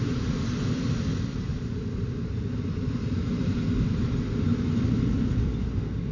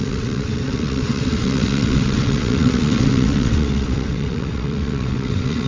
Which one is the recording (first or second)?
first